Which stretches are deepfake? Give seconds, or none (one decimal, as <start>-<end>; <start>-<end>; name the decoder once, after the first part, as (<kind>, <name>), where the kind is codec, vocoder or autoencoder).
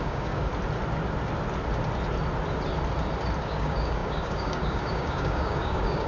0.0-0.5 (codec, DAC); 3.4-6.1